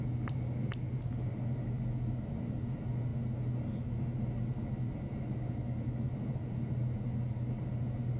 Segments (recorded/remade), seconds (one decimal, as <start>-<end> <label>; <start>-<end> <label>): 0.0-8.2 recorded